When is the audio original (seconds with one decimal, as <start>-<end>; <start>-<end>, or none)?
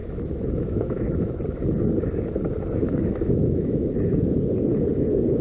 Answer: 1.4-2.8; 3.9-5.4